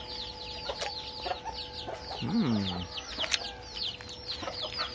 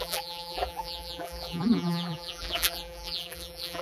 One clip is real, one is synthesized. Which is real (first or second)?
first